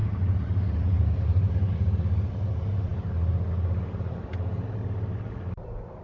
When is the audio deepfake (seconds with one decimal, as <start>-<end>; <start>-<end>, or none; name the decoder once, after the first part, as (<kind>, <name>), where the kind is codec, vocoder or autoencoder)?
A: none